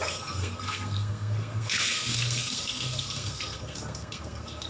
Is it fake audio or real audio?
fake